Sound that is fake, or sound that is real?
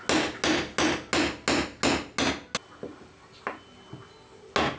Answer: real